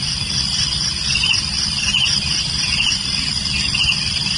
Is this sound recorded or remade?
recorded